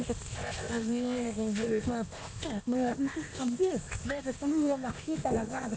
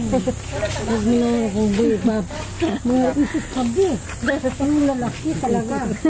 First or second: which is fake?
first